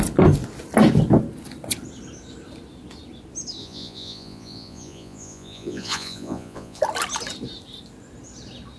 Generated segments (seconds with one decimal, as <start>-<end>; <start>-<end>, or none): 3.6-6.8